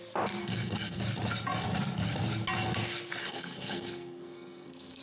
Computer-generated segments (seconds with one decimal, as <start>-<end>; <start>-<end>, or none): 0.4-1.0; 3.2-5.0